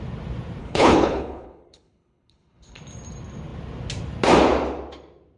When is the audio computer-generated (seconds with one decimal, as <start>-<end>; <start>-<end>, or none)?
0.6-2.8